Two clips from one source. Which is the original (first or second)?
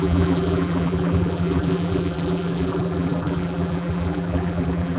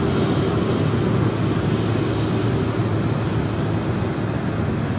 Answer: second